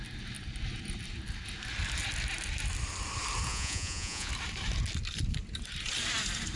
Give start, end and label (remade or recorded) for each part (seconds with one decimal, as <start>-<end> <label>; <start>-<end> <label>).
0.0-3.5 recorded; 3.5-4.3 remade; 4.3-6.6 recorded